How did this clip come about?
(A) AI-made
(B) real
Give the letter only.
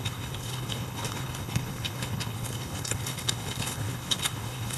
A